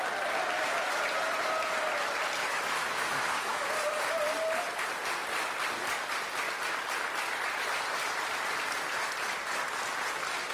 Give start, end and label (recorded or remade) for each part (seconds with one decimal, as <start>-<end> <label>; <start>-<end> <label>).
0.0-2.4 recorded; 2.4-3.7 remade; 3.7-10.5 recorded